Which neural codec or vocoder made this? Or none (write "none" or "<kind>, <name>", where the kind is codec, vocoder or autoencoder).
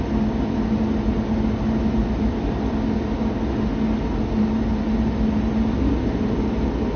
none